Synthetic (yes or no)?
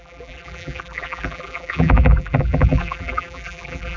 yes